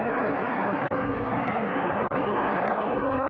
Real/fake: fake